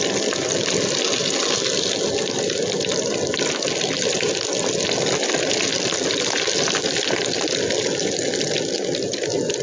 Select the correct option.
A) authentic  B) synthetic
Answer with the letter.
A